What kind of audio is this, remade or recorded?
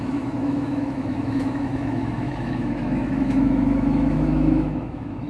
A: remade